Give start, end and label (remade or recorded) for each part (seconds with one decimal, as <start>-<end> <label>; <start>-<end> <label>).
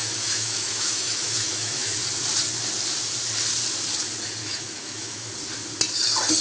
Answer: 0.0-2.0 remade; 2.0-4.4 recorded; 4.4-5.3 remade; 5.3-6.4 recorded